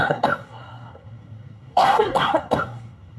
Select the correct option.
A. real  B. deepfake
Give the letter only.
B